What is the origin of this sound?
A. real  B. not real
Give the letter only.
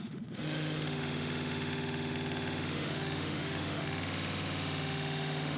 B